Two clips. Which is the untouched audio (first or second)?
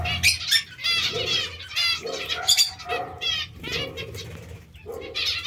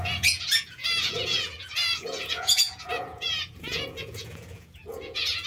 first